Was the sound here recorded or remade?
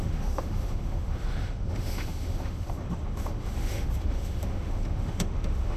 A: remade